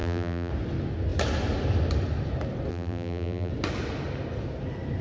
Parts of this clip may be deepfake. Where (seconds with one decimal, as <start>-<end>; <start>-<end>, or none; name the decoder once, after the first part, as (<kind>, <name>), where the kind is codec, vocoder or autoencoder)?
0.0-0.5 (vocoder, BigVGAN v2); 2.7-3.5